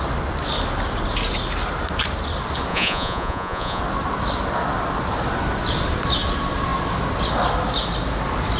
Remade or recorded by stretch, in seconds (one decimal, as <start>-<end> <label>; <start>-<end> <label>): 0.0-2.7 recorded; 2.7-3.8 remade; 3.8-8.6 recorded

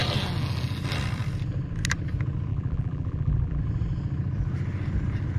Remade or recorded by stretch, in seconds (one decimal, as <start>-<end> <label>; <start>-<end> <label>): 0.0-2.5 recorded; 2.5-3.6 remade; 3.6-5.4 recorded

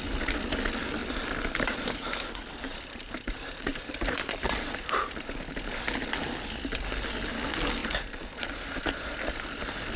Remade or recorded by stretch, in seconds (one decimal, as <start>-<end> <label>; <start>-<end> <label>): 0.0-1.0 recorded; 1.0-5.4 remade; 5.4-7.8 recorded; 7.8-8.6 remade; 8.6-10.0 recorded

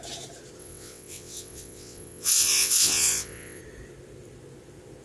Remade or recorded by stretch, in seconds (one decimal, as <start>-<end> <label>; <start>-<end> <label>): 0.0-0.6 recorded; 0.6-3.6 remade; 3.6-5.0 recorded

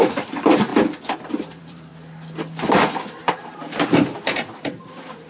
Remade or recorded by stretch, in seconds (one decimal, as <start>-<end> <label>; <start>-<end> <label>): 0.0-0.7 remade; 0.7-1.5 recorded; 1.5-1.9 remade; 1.9-2.9 recorded; 2.9-5.3 remade

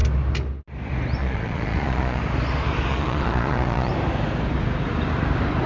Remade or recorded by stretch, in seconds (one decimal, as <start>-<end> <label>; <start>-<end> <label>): 0.0-1.2 recorded; 1.2-2.2 remade; 2.2-2.9 recorded; 2.9-3.9 remade; 3.9-5.7 recorded

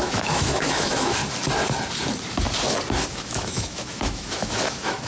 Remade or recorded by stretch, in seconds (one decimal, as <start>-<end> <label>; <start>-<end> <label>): 0.0-1.2 remade; 1.2-3.1 recorded; 3.1-5.1 remade